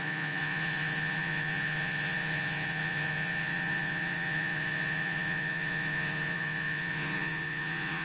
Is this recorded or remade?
remade